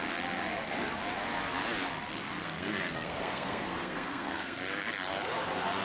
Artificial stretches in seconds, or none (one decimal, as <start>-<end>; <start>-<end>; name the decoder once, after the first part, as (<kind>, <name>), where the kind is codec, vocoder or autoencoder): 2.4-4.6 (codec, SNAC)

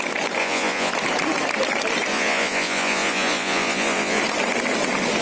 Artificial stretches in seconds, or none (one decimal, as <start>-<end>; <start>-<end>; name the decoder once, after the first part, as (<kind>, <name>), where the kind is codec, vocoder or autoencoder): 0.4-0.9 (vocoder, Vocos); 2.1-4.2